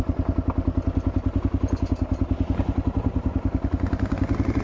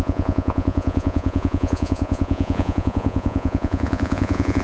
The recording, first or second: first